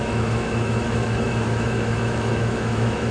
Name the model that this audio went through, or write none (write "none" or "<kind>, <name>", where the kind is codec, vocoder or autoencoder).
autoencoder, DAC-VAE